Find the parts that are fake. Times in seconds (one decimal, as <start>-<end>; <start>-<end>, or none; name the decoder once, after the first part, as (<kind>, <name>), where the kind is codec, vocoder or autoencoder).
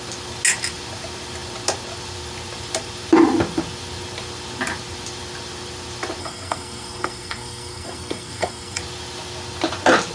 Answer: 6.2-8.8 (codec, SNAC)